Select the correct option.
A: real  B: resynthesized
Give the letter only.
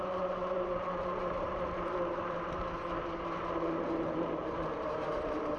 B